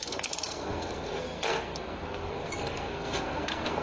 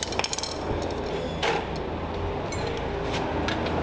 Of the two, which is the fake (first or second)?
first